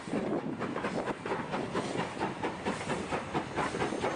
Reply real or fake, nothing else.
real